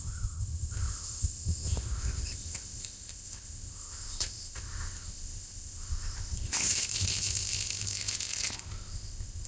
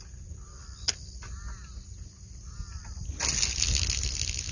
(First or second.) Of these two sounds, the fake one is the first